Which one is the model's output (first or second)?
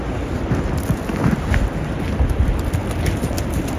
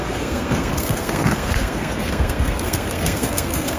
second